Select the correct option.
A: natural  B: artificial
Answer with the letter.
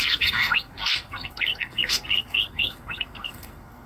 B